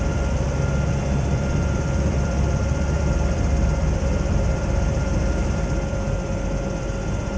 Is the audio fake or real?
fake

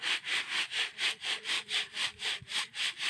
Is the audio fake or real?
fake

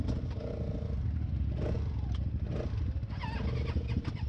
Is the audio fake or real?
real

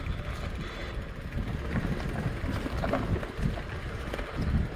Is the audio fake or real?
real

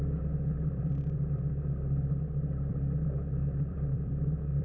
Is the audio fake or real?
fake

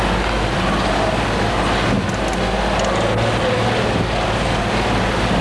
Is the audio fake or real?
real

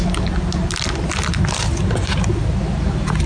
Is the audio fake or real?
real